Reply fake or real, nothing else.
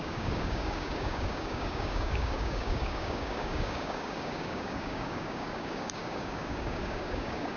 fake